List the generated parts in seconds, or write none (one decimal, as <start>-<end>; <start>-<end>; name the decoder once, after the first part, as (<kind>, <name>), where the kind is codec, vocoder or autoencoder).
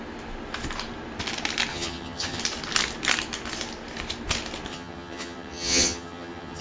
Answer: 1.7-2.4 (vocoder, HiFi-GAN); 4.7-6.6